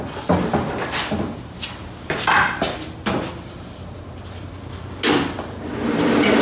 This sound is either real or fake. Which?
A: real